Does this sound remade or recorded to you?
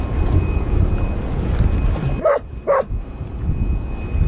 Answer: recorded